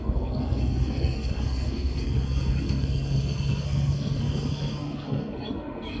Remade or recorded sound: remade